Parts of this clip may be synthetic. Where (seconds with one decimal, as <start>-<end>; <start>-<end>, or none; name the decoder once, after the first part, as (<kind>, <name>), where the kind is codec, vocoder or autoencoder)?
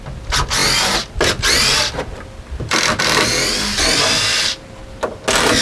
none